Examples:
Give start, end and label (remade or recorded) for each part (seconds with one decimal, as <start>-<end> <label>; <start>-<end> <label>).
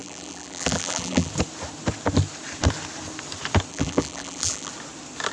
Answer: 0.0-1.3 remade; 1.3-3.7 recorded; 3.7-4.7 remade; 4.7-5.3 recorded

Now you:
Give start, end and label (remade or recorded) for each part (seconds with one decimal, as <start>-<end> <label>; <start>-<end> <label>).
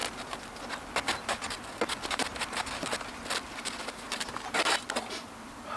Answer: 0.0-5.8 recorded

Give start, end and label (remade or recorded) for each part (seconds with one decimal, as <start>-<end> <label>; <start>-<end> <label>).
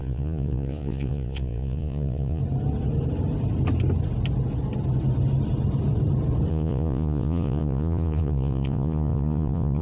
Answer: 0.0-2.4 remade; 2.4-6.5 recorded; 6.5-9.8 remade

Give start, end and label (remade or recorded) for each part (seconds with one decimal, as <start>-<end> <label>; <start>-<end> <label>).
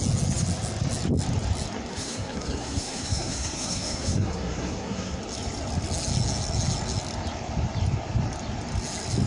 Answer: 0.0-1.9 recorded; 1.9-5.2 remade; 5.2-9.3 recorded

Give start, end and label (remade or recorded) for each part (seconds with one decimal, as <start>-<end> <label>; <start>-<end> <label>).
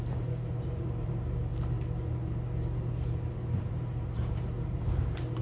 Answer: 0.0-1.5 remade; 1.5-3.7 recorded; 3.7-5.4 remade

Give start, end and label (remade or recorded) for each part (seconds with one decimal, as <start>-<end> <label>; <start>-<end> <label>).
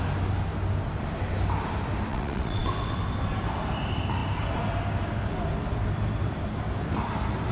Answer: 0.0-2.1 recorded; 2.1-2.6 remade; 2.6-7.5 recorded